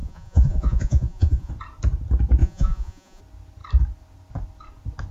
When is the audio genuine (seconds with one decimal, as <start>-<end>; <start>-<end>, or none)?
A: 1.5-2.4; 3.2-5.1